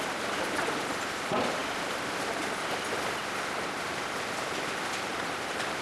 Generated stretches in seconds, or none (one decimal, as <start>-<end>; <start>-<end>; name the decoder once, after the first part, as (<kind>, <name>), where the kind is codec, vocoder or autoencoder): 5.1-5.8 (vocoder, BigVGAN v2)